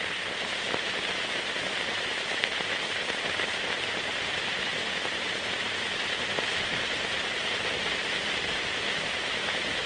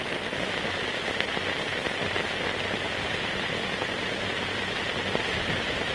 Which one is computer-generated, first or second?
first